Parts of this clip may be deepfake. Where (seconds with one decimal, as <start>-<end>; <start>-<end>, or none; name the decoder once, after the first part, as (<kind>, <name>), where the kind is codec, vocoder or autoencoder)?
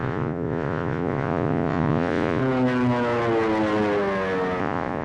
0.0-2.4 (vocoder, Vocos); 4.6-5.0